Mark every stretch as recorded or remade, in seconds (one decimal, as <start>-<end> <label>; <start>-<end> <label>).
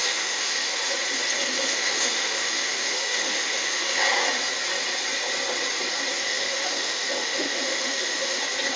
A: 0.0-0.8 remade; 0.8-1.4 recorded; 1.4-4.0 remade; 4.0-6.3 recorded; 6.3-8.4 remade; 8.4-8.8 recorded